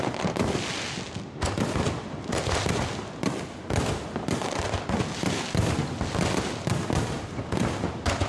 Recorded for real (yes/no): yes